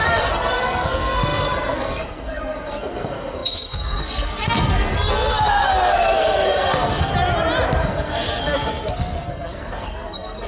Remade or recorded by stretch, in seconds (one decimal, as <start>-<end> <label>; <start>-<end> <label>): 0.0-7.1 remade; 7.1-7.8 recorded; 7.8-10.5 remade